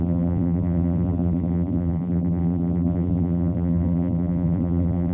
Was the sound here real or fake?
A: fake